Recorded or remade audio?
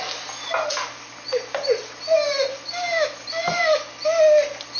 recorded